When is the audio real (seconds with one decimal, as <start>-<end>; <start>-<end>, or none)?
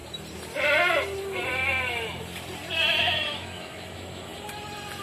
0.0-3.0; 4.3-5.0